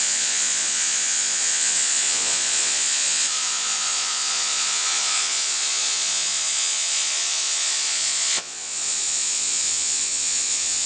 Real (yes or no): no